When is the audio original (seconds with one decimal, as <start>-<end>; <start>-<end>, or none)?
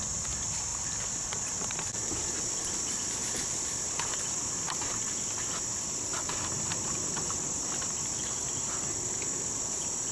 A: 0.0-0.7; 2.4-3.2; 3.9-6.1; 9.2-10.1